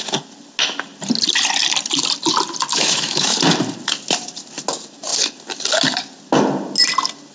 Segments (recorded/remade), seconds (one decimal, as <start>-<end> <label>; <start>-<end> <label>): 0.0-2.7 recorded; 2.7-3.4 remade; 3.4-7.3 recorded